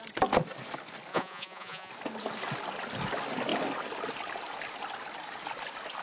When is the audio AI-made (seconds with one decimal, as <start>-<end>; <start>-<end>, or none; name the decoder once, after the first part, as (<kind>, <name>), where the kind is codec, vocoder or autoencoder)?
1.1-1.9 (vocoder, Vocos)